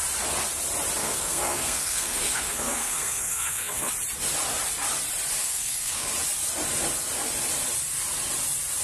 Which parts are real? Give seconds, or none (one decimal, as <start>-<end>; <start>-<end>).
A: 0.0-1.0; 3.9-5.4; 6.1-8.8